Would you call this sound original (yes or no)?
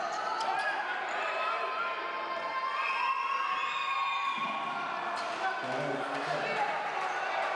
yes